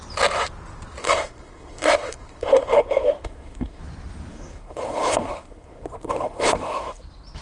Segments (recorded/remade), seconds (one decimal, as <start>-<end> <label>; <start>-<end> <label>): 0.0-1.0 recorded; 1.0-3.8 remade; 3.8-4.3 recorded; 4.3-7.0 remade; 7.0-7.4 recorded